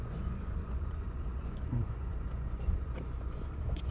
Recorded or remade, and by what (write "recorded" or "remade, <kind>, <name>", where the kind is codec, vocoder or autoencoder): remade, vocoder, Vocos